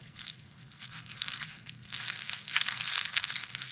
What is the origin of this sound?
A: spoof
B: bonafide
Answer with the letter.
A